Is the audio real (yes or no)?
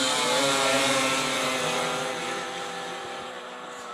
no